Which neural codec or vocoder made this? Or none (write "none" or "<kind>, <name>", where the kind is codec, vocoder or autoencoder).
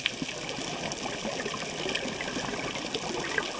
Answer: none